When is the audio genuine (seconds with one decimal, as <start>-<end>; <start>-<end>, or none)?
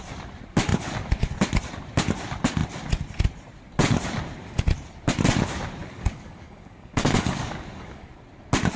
0.0-5.8; 8.1-8.8